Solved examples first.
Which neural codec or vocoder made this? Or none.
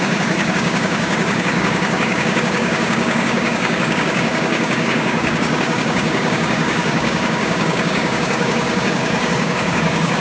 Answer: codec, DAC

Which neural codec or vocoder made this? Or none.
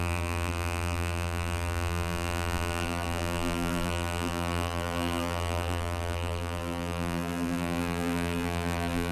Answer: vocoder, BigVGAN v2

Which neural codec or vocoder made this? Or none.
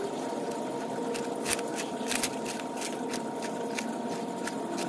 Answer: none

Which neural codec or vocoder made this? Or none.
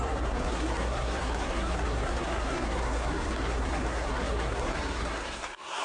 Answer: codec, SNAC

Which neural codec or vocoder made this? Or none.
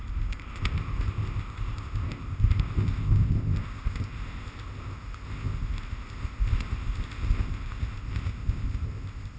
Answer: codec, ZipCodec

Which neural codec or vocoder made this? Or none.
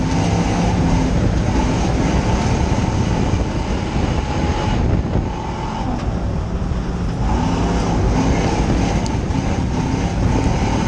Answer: none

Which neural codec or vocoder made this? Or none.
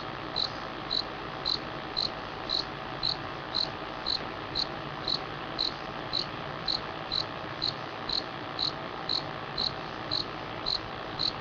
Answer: vocoder, BigVGAN v2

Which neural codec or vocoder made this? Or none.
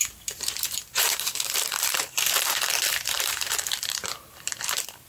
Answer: vocoder, BigVGAN v2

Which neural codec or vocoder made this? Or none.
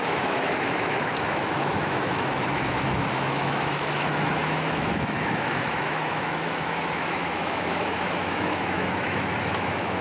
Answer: autoencoder, DAC-VAE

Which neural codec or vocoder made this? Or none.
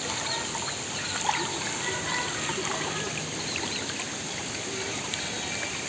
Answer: none